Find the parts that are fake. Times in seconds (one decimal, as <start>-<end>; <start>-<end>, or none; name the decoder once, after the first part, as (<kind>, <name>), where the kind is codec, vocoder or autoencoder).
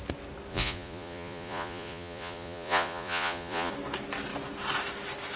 0.5-3.7 (vocoder, Vocos)